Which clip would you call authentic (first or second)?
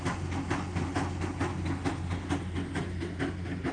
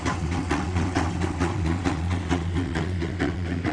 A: first